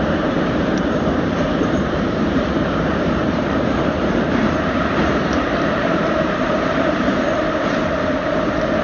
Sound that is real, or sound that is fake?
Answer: fake